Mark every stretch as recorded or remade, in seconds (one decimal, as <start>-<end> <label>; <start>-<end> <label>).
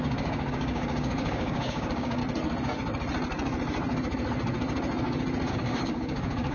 0.0-2.2 remade; 2.2-5.5 recorded; 5.5-6.5 remade